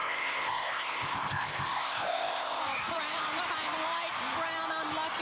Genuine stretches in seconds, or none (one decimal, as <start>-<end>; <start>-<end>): 2.6-5.2